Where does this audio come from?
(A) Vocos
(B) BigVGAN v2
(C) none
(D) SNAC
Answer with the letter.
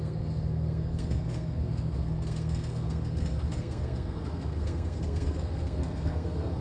D